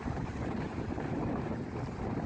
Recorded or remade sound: remade